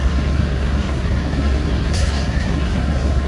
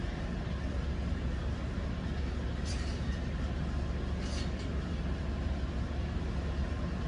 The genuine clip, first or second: second